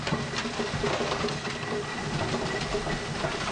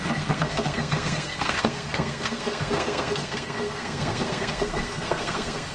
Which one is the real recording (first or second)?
first